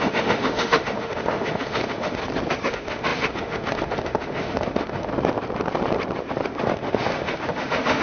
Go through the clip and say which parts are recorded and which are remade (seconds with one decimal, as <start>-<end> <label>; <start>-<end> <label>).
0.0-2.2 remade; 2.2-2.7 recorded; 2.7-5.1 remade; 5.1-6.6 recorded; 6.6-8.0 remade